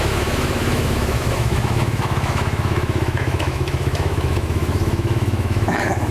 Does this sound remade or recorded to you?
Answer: remade